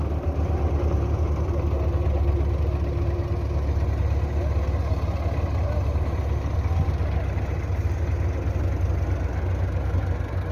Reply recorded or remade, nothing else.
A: recorded